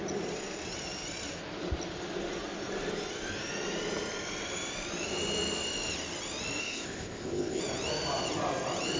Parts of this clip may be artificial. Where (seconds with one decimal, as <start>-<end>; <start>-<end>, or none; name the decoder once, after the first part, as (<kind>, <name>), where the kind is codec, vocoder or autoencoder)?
6.6-7.6 (codec, ZipCodec)